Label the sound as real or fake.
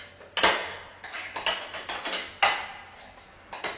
real